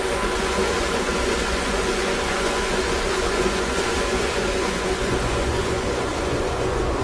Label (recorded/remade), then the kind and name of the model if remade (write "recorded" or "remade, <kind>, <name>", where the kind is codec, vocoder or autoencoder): remade, vocoder, Vocos